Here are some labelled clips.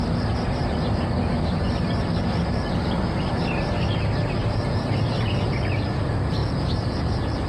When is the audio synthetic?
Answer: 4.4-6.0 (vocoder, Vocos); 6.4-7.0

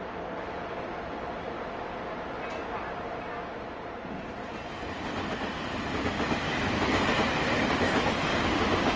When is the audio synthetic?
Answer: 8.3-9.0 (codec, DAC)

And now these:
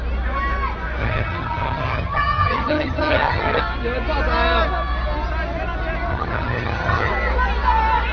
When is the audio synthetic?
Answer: 1.0-3.6 (vocoder, HiFi-GAN); 6.1-7.1

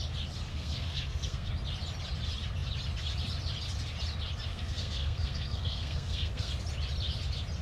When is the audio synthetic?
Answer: 0.5-1.5 (codec, SNAC); 4.5-6.5